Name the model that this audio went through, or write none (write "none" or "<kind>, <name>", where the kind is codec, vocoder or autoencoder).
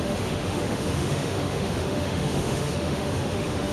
autoencoder, DAC-VAE